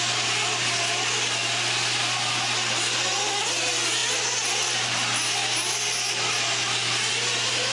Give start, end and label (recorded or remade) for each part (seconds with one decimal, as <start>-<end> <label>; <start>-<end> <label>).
0.0-7.7 recorded